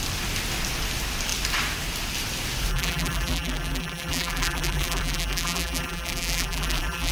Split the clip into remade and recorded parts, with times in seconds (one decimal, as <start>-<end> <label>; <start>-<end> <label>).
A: 0.0-2.7 recorded; 2.7-7.1 remade